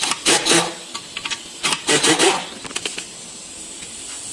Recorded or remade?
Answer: recorded